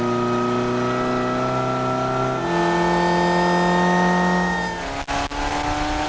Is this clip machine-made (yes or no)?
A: no